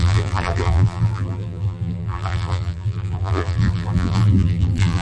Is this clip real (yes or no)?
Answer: no